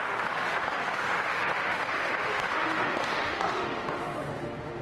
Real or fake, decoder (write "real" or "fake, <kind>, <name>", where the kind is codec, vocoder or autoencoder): fake, autoencoder, DAC-VAE